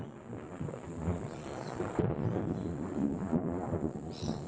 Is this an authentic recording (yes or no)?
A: no